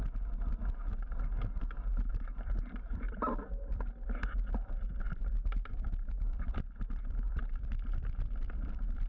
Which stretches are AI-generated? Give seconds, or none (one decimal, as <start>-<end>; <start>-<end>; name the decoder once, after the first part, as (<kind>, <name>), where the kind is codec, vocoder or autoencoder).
2.1-9.1 (vocoder, BigVGAN v2)